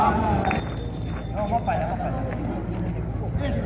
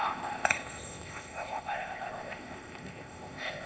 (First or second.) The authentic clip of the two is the first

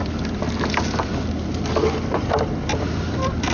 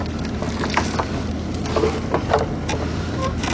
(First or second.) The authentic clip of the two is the second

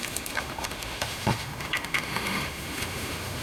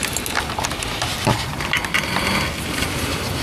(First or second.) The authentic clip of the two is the second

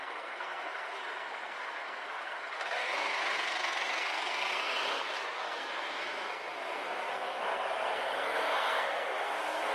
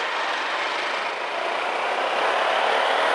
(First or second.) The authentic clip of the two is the second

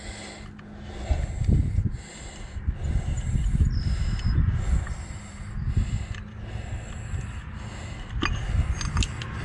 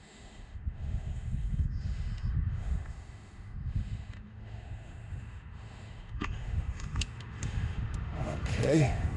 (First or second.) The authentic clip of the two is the first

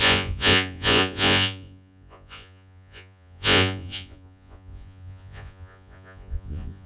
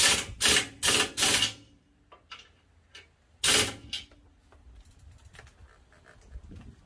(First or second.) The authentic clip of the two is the second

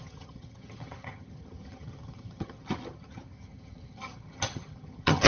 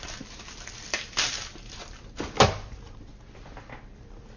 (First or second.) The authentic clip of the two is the second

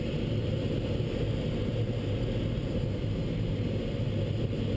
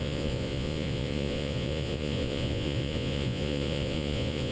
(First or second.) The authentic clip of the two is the first